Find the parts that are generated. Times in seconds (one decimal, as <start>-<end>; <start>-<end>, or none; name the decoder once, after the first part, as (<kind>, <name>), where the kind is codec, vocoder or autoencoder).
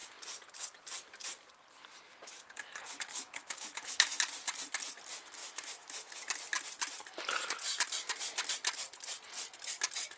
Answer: 3.1-4.2 (autoencoder, DAC-VAE); 5.4-6.1